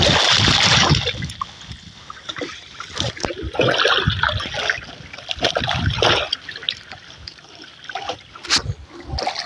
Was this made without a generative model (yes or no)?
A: yes